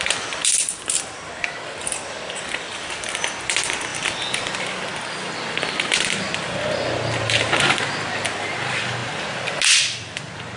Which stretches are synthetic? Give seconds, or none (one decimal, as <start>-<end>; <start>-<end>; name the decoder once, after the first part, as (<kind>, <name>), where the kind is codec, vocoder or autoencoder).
none